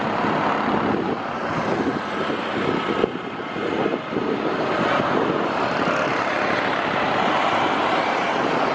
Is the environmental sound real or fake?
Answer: real